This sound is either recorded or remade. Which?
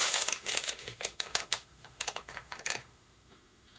remade